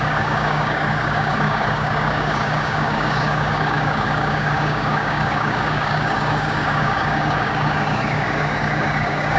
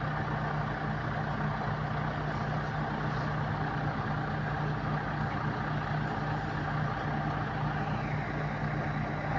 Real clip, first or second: second